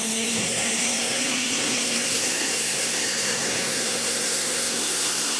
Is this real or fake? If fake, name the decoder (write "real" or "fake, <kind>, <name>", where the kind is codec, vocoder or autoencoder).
fake, codec, SNAC